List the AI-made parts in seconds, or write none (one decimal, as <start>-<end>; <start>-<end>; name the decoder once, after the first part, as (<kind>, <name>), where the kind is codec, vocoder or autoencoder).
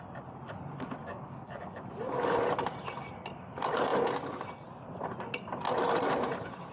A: 1.0-1.8 (codec, DAC)